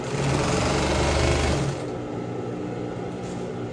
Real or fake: real